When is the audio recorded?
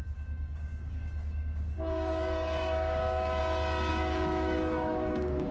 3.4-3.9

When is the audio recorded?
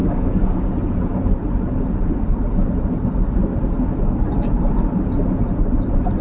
0.7-6.2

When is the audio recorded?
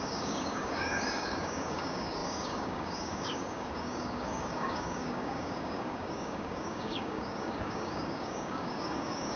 none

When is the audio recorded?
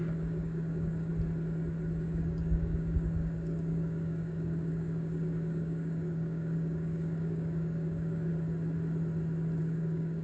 1.1-2.0; 8.3-9.6